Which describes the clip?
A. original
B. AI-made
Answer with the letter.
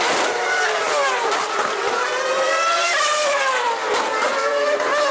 B